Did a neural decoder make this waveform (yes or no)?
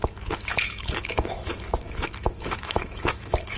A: yes